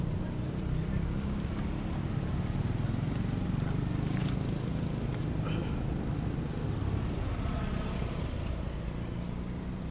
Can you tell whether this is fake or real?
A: real